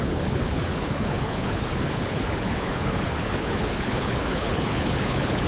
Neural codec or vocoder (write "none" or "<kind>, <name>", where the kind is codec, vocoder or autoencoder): codec, HILCodec